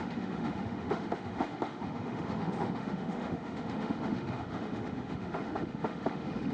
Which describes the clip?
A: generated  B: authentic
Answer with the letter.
A